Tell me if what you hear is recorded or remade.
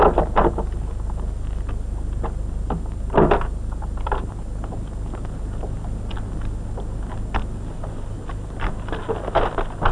recorded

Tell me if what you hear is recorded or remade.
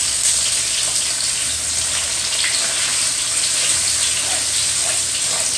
recorded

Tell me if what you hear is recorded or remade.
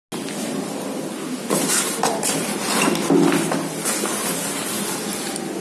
recorded